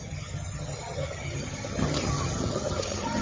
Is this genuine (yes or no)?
no